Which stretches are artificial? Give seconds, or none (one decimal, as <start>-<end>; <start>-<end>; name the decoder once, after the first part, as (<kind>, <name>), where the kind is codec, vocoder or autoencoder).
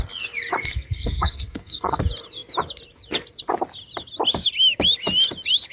0.6-2.0 (codec, SNAC)